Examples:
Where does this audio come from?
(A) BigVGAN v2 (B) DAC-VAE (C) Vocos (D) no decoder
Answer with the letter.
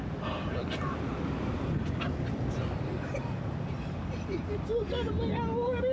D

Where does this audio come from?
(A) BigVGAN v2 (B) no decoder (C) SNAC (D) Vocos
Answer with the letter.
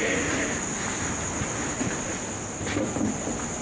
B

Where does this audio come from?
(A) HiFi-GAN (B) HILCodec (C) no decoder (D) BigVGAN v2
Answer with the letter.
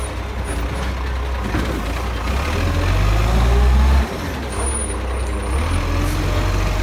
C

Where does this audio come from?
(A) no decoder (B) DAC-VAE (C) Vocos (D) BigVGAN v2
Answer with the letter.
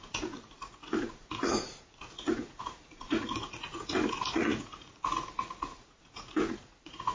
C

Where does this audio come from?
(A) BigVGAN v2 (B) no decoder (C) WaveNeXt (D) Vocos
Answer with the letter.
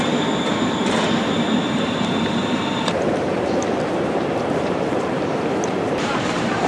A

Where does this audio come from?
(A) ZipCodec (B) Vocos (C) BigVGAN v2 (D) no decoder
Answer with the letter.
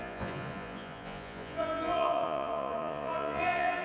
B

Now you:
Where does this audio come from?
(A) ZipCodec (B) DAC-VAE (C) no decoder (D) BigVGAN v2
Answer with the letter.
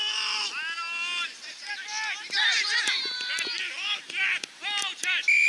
C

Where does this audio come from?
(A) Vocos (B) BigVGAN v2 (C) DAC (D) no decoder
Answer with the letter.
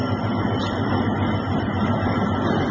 D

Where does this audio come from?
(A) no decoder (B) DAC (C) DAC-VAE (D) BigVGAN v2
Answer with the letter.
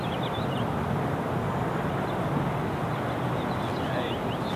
A